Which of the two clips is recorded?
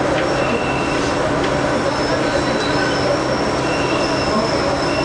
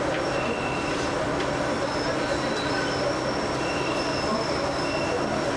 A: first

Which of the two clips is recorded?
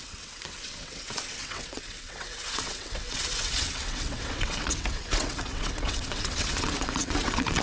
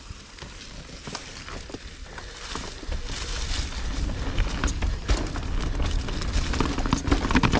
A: second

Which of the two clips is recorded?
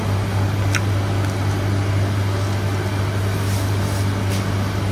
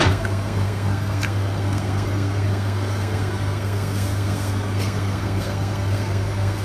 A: first